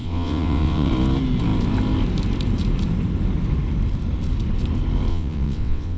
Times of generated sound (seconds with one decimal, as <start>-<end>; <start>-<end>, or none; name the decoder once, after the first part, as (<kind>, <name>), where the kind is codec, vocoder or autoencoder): 0.0-0.9 (vocoder, WaveNeXt); 5.1-6.0